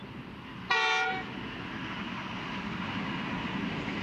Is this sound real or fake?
real